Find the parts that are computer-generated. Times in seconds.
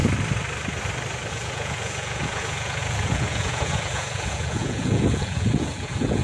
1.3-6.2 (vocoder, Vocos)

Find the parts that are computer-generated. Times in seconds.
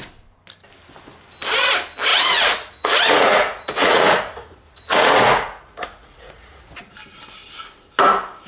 2.1-6.8 (vocoder, Vocos)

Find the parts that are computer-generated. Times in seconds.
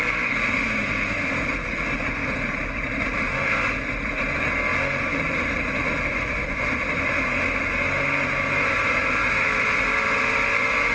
6.1-6.8 (vocoder, Vocos)